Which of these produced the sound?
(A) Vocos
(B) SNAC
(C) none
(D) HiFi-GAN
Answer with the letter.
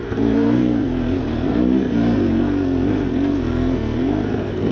B